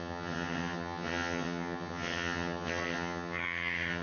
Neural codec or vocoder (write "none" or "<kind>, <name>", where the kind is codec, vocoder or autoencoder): vocoder, HiFi-GAN